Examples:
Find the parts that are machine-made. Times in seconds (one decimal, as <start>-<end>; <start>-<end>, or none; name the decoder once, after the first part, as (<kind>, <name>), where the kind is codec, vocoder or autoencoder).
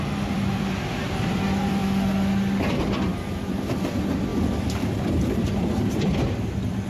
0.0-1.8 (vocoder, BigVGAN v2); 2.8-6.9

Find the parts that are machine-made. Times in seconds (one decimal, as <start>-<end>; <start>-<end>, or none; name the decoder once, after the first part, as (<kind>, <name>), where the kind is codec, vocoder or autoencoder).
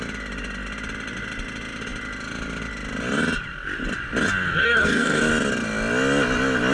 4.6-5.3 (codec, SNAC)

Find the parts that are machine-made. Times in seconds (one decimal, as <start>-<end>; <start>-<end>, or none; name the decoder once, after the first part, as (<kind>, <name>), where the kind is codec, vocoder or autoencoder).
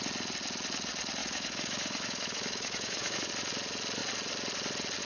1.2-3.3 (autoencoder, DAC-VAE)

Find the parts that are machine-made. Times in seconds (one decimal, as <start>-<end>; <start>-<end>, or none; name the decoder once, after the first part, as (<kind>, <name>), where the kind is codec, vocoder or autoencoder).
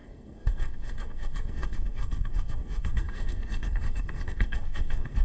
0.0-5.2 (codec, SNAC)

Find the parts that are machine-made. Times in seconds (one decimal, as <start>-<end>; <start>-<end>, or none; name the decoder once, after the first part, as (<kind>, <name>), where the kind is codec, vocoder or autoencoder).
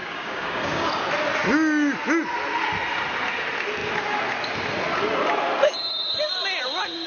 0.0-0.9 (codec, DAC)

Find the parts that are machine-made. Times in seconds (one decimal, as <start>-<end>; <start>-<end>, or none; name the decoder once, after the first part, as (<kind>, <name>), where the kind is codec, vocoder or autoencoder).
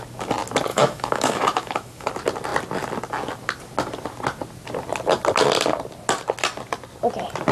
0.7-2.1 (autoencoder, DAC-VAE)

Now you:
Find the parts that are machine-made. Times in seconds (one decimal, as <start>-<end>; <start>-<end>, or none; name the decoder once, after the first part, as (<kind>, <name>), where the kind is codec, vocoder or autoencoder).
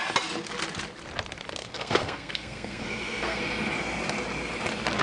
1.6-3.4 (codec, SNAC)